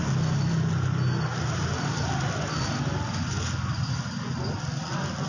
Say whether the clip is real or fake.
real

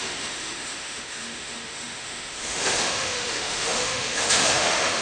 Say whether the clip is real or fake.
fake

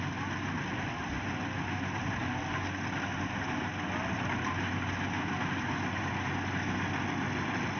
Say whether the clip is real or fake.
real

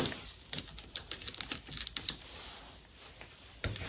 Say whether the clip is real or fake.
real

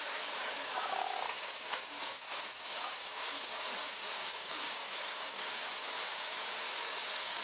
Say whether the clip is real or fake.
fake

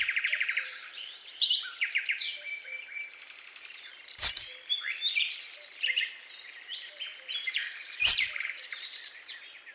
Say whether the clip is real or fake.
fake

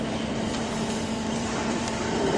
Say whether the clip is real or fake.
fake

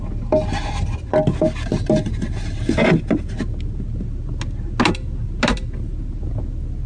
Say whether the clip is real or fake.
real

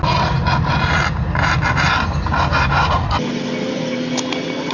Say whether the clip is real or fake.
real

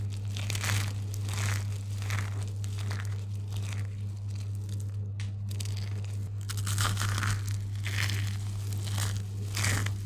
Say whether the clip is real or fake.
real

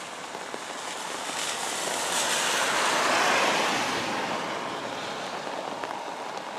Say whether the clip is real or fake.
real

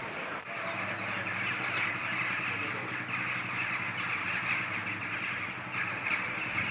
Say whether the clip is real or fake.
real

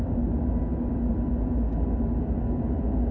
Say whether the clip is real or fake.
real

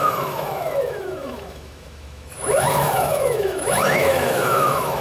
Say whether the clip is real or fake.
fake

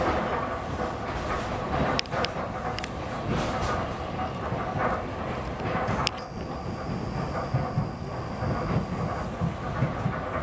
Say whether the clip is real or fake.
real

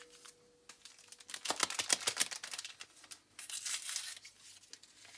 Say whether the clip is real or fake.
real